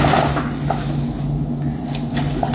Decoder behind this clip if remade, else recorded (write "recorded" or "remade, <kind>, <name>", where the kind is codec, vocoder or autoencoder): recorded